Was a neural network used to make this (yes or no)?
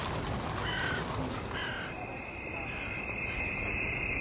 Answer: no